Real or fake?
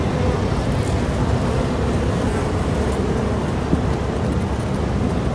real